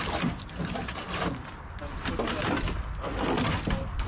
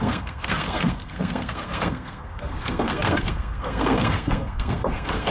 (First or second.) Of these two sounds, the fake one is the second